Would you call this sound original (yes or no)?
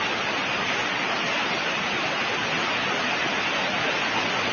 yes